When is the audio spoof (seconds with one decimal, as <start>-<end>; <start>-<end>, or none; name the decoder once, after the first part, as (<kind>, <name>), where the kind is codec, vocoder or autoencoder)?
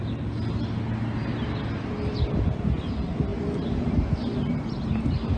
none